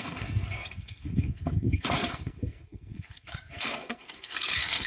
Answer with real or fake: fake